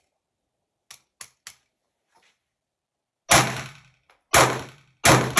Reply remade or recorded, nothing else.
recorded